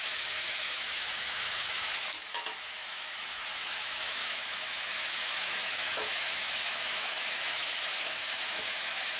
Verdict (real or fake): fake